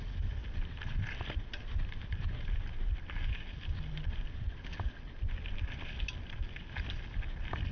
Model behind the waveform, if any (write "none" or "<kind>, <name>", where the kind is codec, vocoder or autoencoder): none